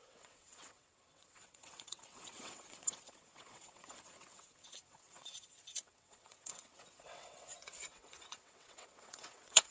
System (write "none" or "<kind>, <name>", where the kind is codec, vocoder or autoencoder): vocoder, WaveNeXt